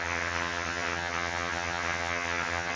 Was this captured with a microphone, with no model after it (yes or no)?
no